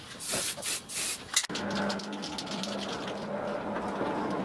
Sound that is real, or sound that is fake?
real